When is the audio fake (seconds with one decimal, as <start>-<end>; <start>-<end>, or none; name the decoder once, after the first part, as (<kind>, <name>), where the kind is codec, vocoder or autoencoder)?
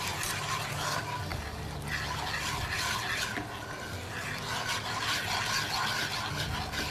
none